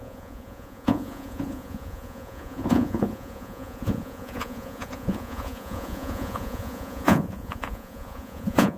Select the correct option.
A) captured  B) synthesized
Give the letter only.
B